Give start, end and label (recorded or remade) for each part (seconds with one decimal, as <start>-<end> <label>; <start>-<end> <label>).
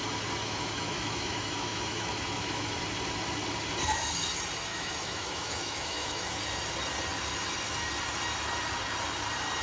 0.0-0.4 recorded; 0.4-2.7 remade; 2.7-4.7 recorded; 4.7-6.4 remade; 6.4-9.6 recorded